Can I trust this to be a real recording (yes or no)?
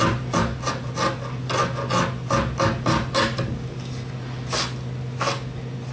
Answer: yes